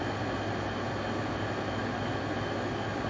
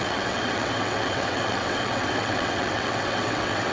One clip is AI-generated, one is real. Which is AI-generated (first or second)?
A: second